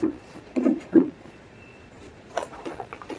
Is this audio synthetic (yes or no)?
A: yes